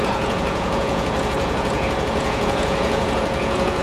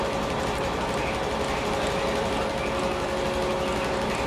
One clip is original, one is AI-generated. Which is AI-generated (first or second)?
first